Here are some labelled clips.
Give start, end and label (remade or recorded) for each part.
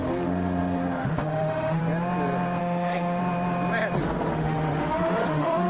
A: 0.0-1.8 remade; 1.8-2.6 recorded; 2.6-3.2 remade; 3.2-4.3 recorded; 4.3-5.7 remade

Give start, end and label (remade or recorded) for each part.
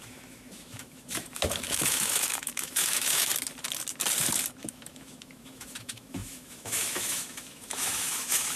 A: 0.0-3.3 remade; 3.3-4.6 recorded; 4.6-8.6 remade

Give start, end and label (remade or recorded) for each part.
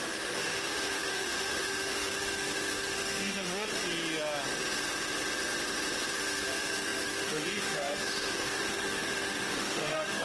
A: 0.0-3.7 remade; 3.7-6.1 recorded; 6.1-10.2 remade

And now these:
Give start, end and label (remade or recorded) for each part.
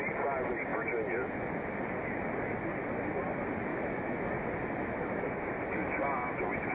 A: 0.0-3.7 recorded; 3.7-4.3 remade; 4.3-4.8 recorded; 4.8-6.0 remade; 6.0-6.7 recorded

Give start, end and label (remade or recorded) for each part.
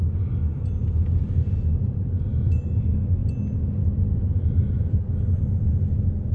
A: 0.0-2.3 recorded; 2.3-2.8 remade; 2.8-6.3 recorded